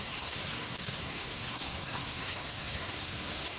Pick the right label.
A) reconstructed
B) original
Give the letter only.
A